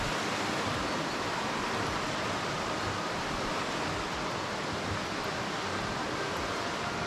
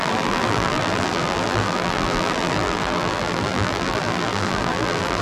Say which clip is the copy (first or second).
second